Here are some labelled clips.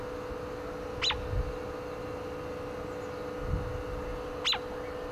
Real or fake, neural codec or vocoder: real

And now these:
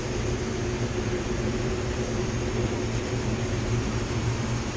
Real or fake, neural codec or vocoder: real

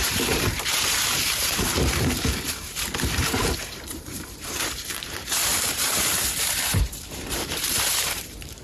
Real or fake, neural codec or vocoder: fake, vocoder, BigVGAN v2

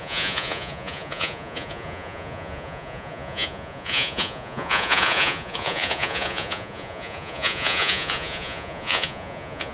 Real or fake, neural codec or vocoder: fake, vocoder, Vocos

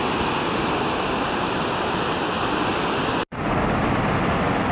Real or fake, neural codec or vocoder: real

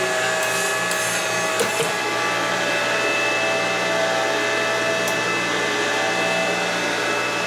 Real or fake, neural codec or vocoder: real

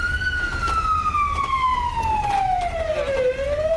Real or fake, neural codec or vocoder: real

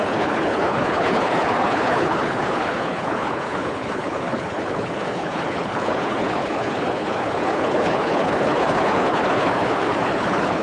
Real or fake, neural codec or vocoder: fake, codec, HILCodec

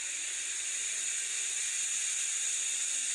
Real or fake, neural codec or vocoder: real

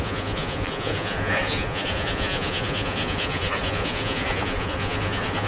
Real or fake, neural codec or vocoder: fake, vocoder, Vocos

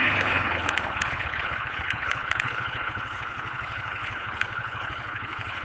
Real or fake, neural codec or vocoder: fake, codec, HILCodec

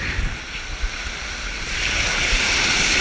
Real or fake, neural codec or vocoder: real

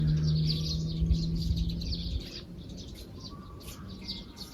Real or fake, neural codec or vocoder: real